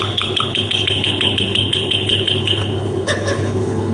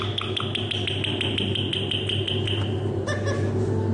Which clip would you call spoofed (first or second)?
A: first